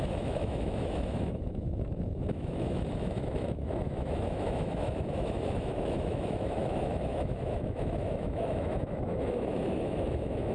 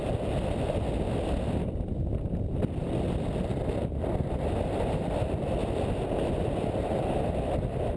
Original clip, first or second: second